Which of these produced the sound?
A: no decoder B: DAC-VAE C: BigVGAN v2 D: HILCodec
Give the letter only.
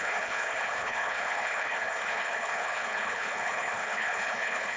D